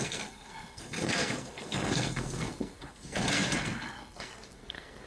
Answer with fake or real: fake